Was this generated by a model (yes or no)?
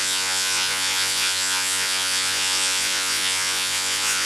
yes